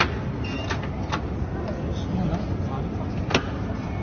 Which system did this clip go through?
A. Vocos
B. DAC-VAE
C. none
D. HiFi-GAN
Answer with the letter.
C